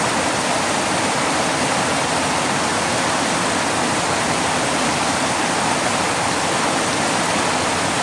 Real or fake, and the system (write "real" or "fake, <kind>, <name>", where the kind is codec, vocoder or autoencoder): real